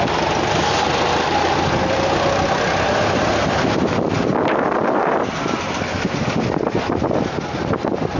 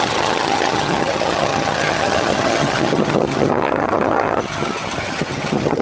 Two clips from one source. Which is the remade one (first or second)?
second